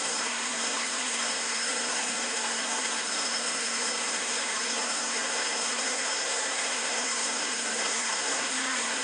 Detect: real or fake fake